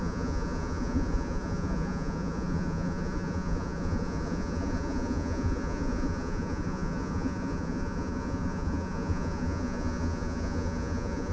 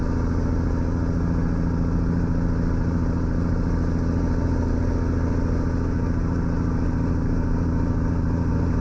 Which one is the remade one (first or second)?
first